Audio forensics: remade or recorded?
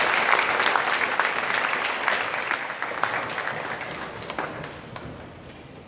recorded